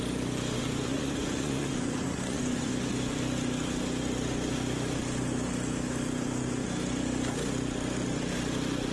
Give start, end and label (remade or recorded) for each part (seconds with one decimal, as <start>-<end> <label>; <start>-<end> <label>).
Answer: 0.0-0.6 recorded; 0.6-2.7 remade; 2.7-8.9 recorded